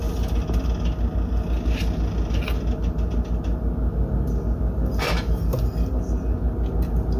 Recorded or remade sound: recorded